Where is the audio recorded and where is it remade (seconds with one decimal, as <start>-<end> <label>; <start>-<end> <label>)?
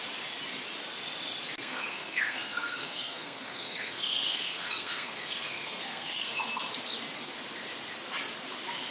0.0-1.6 recorded; 1.6-6.4 remade; 6.4-8.9 recorded